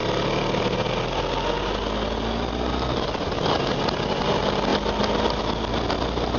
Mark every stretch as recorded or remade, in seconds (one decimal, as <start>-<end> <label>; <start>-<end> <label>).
0.0-6.4 recorded